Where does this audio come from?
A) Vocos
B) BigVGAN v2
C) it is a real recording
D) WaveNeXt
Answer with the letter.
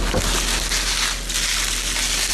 C